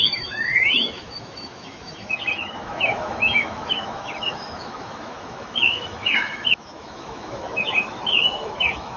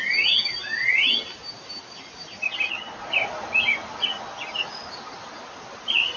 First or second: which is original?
second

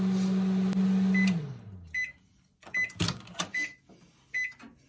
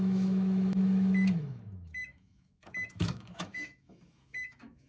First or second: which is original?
first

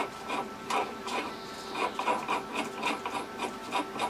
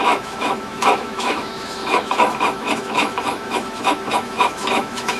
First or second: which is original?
first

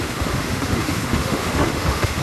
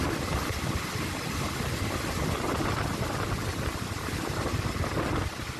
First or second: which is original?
second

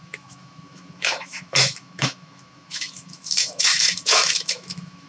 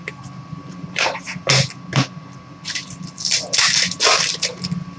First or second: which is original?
second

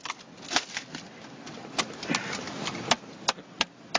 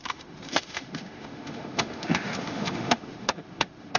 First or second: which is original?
first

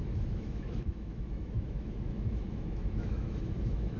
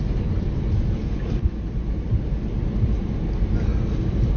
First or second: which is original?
second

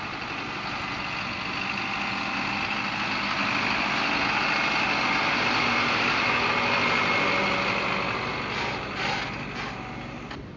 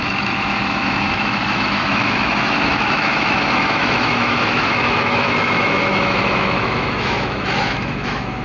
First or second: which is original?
first